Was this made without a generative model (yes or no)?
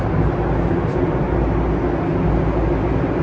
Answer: yes